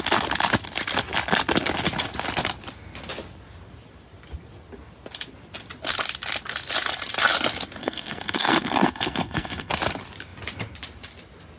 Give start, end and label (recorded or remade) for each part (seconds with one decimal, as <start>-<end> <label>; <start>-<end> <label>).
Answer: 0.0-7.8 recorded; 7.8-9.7 remade; 9.7-11.6 recorded